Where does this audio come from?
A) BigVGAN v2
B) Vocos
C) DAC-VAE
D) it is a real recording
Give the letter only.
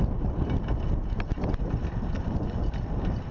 D